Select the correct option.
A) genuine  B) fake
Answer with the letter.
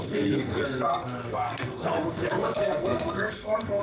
B